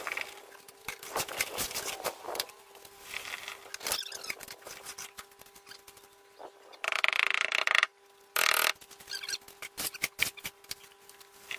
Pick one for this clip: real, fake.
real